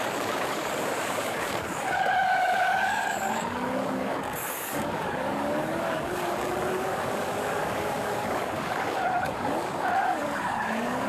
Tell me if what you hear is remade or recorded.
remade